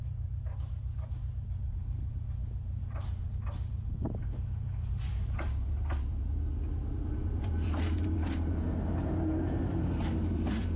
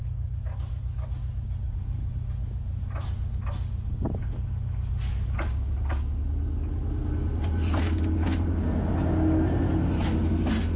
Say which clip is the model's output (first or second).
first